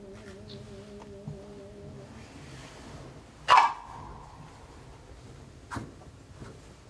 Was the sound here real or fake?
real